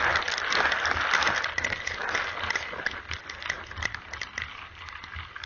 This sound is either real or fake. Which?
real